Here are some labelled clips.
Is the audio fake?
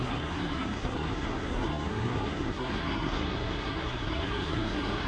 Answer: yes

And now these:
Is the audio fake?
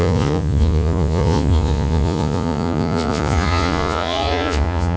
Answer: yes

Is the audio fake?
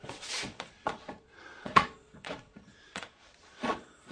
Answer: yes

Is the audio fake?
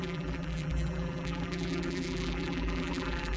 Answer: yes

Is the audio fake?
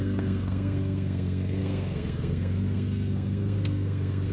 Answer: yes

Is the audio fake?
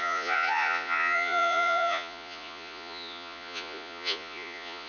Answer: yes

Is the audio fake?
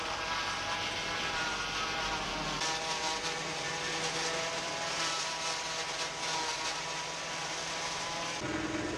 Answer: no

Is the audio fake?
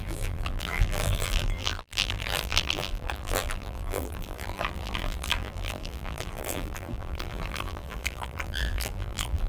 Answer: yes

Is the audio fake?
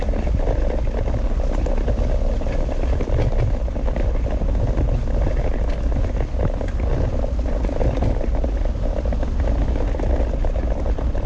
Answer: no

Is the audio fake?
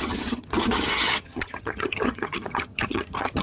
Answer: yes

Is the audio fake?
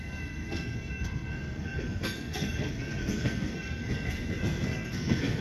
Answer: yes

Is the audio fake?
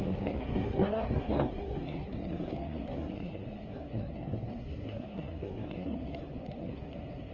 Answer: yes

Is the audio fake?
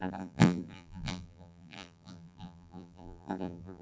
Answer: yes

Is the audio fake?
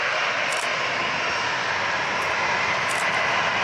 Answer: no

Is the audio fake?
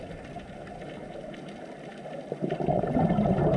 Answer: no